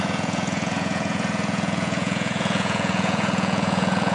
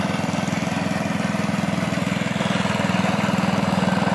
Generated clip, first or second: first